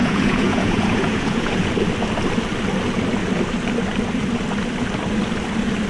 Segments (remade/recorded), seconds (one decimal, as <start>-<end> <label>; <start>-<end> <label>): 0.0-1.7 remade; 1.7-5.9 recorded